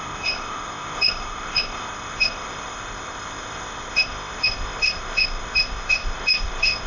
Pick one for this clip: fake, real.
fake